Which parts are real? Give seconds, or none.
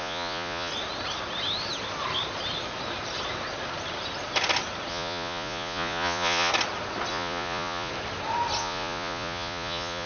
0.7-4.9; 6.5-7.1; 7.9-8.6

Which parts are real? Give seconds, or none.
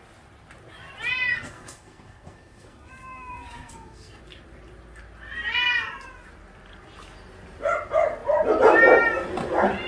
0.0-1.3; 4.2-9.9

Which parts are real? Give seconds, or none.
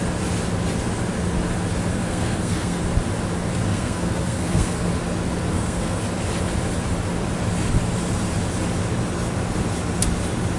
0.0-1.9; 2.8-3.7; 4.9-5.5; 6.0-10.6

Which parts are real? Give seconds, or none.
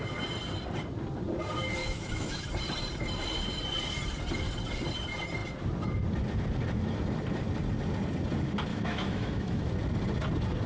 0.0-1.8; 2.4-8.7; 9.7-10.7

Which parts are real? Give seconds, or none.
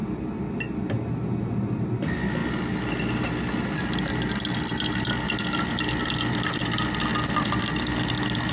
0.0-8.5